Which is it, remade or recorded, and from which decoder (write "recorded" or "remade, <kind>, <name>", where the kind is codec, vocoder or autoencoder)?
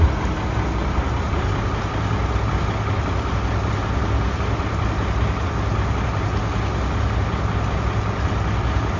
recorded